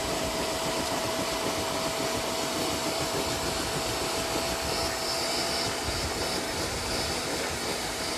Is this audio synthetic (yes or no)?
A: no